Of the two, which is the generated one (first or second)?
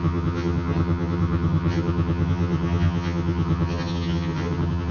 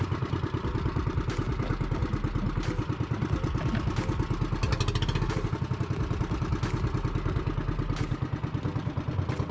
first